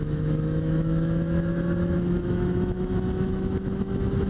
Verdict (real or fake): fake